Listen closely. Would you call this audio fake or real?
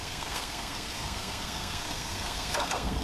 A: fake